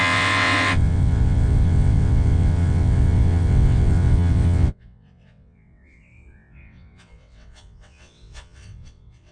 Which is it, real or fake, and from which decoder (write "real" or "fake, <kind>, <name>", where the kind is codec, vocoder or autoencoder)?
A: fake, vocoder, WaveNeXt